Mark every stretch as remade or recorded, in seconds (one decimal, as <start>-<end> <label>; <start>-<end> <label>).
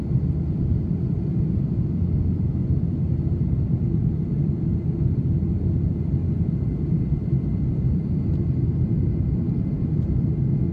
0.0-10.7 recorded